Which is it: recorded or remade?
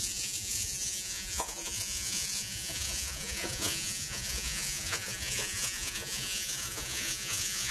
remade